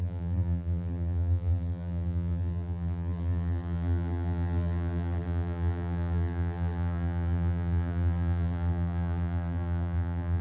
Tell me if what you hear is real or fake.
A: fake